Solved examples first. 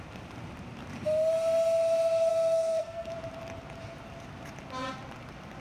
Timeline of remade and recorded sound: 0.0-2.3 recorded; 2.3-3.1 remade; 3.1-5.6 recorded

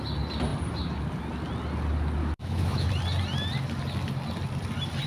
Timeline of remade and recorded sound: 0.0-2.2 recorded; 2.2-2.9 remade; 2.9-5.1 recorded

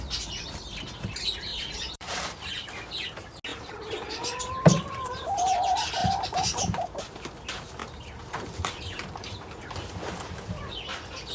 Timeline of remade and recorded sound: 0.0-1.5 recorded; 1.5-2.4 remade; 2.4-3.5 recorded; 3.5-4.9 remade; 4.9-6.0 recorded; 6.0-7.0 remade; 7.0-7.8 recorded; 7.8-9.1 remade; 9.1-11.3 recorded

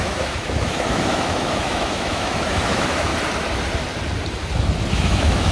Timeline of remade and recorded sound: 0.0-3.1 remade; 3.1-4.9 recorded; 4.9-5.5 remade